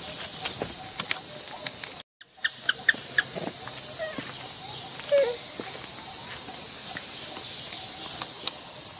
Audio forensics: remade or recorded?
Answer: recorded